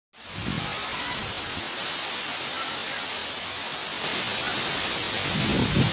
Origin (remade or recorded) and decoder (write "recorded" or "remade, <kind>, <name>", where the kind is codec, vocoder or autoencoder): recorded